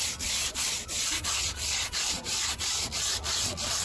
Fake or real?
fake